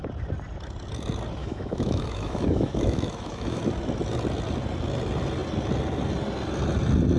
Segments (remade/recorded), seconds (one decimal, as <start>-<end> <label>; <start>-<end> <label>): 0.0-1.4 recorded; 1.4-3.6 remade; 3.6-7.2 recorded